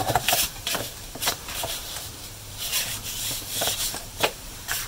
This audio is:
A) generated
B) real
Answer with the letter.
A